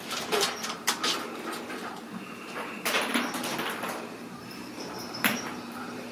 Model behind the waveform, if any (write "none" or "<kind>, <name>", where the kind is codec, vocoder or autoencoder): vocoder, BigVGAN v2